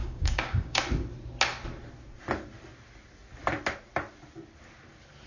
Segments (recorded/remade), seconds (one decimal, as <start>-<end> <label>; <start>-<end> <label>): 0.0-0.8 remade; 0.8-5.3 recorded